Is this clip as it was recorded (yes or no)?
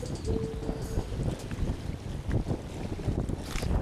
yes